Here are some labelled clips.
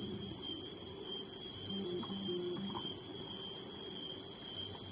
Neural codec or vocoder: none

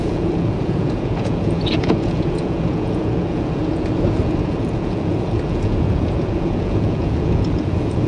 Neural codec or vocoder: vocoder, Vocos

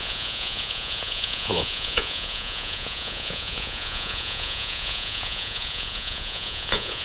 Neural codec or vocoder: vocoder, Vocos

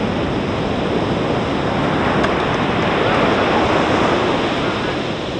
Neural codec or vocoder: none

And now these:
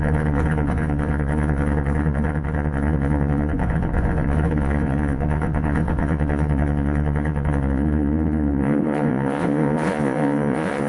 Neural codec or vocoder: vocoder, Vocos